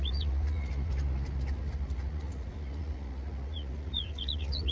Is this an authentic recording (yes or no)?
no